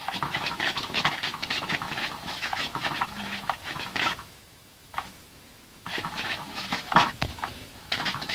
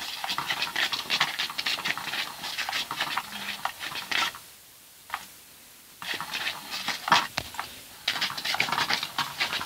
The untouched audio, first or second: second